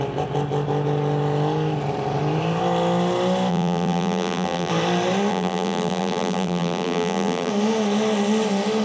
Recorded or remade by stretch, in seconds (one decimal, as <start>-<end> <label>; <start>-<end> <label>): 0.0-3.5 recorded; 3.5-4.7 remade; 4.7-5.3 recorded; 5.3-7.5 remade; 7.5-8.8 recorded